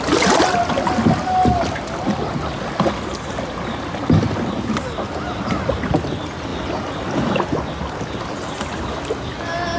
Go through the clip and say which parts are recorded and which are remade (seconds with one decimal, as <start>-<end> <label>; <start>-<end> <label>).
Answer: 0.0-9.8 recorded